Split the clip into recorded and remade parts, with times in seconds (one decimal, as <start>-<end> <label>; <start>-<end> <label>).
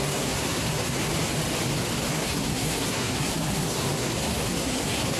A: 0.0-1.1 remade; 1.1-2.1 recorded; 2.1-5.2 remade